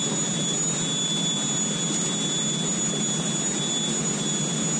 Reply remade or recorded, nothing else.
recorded